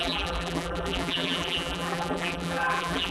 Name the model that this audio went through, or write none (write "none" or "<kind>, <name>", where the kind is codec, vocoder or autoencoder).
vocoder, BigVGAN v2